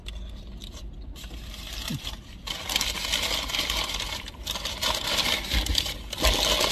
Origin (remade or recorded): recorded